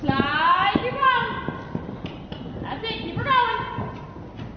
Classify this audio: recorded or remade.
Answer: recorded